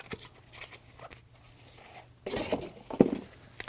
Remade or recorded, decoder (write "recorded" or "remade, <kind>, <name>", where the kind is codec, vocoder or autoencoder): recorded